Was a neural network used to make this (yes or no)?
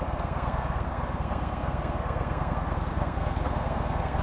yes